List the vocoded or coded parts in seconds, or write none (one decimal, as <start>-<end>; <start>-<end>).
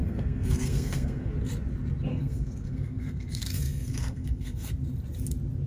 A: 0.0-1.3; 2.1-4.7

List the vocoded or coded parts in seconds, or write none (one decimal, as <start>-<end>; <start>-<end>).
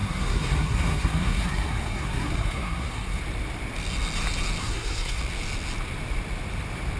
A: 0.0-3.2; 4.6-5.2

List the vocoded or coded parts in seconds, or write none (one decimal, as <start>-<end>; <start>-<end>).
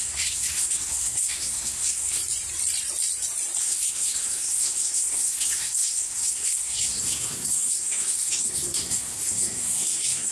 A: 0.0-2.2; 3.6-10.3